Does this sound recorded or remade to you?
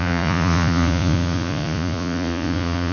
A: remade